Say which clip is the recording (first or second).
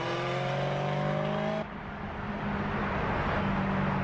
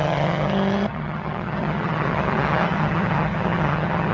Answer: first